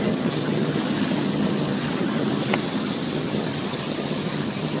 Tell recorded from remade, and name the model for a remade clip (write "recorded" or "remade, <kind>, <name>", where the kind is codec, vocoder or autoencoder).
remade, vocoder, HiFi-GAN